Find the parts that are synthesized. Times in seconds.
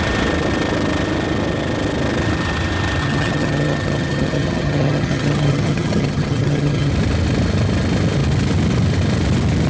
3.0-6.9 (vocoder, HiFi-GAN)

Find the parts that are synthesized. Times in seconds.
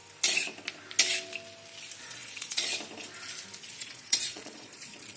2.0-2.7 (vocoder, Vocos); 3.6-5.2